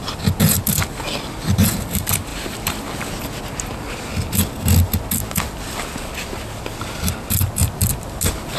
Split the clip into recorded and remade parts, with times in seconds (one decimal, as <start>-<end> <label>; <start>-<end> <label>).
0.0-8.6 recorded